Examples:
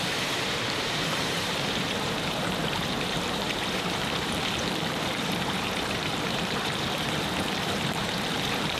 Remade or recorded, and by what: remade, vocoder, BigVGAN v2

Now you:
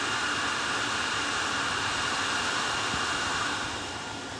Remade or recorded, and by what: recorded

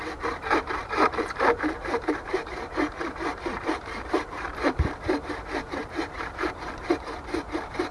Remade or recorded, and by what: remade, vocoder, BigVGAN v2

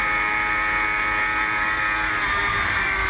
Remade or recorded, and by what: recorded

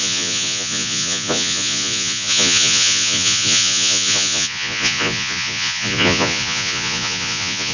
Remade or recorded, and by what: remade, vocoder, Vocos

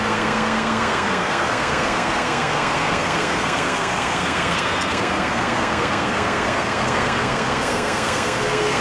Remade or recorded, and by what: remade, codec, SNAC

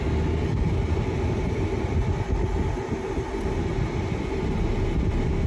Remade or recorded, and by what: recorded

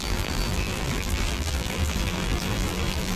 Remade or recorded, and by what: remade, vocoder, BigVGAN v2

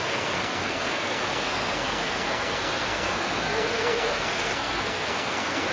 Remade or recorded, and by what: remade, codec, SNAC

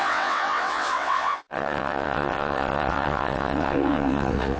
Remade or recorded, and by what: remade, vocoder, WaveNeXt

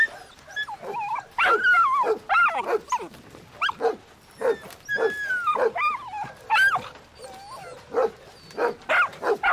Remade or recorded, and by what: recorded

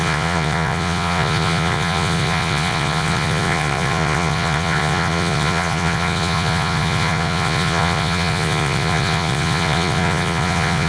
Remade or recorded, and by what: remade, vocoder, Vocos